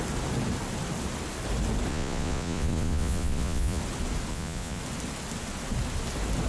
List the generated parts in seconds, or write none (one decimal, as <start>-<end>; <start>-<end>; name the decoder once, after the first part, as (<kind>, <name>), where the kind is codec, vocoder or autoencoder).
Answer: 1.9-3.8 (vocoder, Vocos); 4.3-4.8